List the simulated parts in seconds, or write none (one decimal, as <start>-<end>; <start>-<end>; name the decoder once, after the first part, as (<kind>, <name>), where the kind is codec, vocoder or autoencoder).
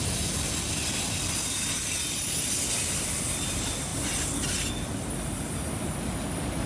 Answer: none